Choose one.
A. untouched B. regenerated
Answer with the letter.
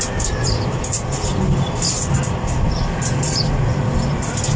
A